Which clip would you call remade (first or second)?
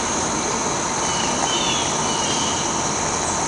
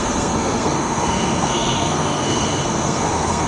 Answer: second